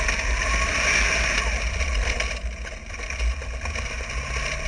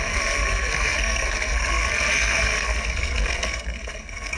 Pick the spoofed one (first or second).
second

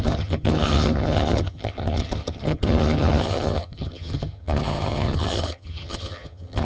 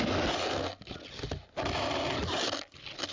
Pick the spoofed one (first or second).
first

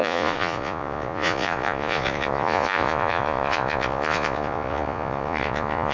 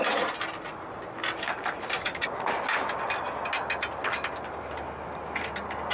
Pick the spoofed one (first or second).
first